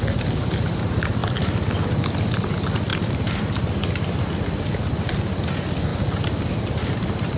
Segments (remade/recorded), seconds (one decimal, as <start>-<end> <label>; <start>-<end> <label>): 0.0-1.2 recorded; 1.2-2.0 remade; 2.0-5.9 recorded; 5.9-6.9 remade; 6.9-7.4 recorded